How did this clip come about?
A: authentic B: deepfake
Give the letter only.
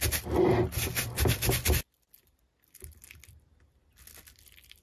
A